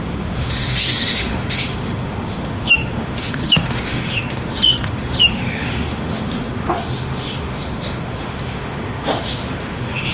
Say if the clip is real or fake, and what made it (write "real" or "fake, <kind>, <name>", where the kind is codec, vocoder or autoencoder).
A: fake, autoencoder, DAC-VAE